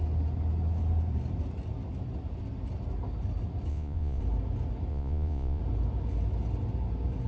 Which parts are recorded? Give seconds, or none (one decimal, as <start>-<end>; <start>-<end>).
0.0-3.7; 4.2-4.9; 5.6-7.3